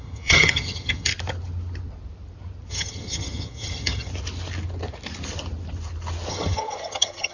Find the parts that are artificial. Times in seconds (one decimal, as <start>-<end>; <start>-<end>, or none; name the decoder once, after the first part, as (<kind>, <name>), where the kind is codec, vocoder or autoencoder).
0.0-1.1 (vocoder, HiFi-GAN); 2.7-4.1; 6.3-7.3